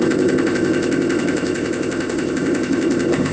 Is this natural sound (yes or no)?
no